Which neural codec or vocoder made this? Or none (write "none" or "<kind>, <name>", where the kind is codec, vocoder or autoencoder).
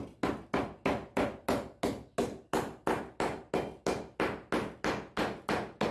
none